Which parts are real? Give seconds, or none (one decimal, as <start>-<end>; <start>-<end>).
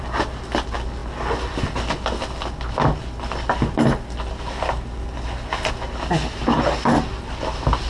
0.0-7.9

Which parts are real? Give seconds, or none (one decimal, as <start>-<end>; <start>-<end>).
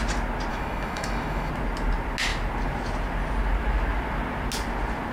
0.0-0.5; 1.5-5.1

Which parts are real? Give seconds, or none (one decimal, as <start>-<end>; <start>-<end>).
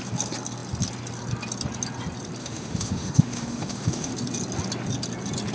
0.0-2.4; 4.1-5.5